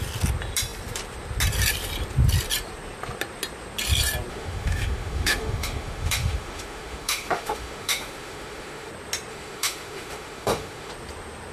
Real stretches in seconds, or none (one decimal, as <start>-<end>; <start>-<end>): 0.0-4.3; 8.9-9.3; 10.9-11.5